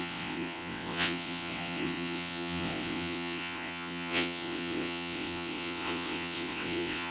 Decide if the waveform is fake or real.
fake